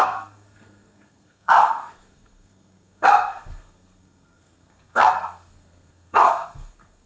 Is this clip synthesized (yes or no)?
yes